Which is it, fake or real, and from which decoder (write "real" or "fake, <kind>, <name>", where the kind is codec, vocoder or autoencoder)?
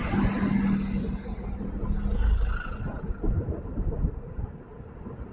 real